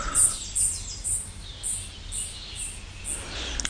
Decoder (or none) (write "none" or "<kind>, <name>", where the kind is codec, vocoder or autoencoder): none